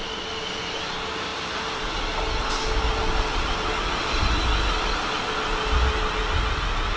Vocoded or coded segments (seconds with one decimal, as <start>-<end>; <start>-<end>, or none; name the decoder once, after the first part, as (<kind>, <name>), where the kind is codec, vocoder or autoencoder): none